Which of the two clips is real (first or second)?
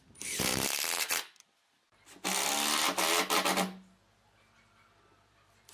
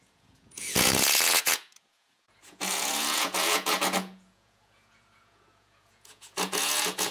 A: first